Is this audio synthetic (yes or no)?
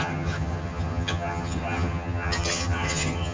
yes